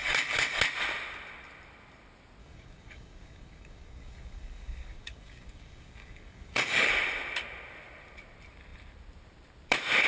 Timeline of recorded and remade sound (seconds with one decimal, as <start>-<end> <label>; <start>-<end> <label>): 0.0-0.6 remade; 0.6-2.4 recorded; 2.4-6.9 remade; 6.9-10.1 recorded